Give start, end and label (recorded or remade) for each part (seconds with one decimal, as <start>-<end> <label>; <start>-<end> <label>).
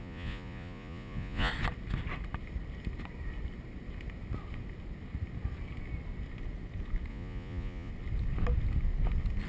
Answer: 0.0-1.5 remade; 1.5-7.1 recorded; 7.1-7.9 remade; 7.9-9.5 recorded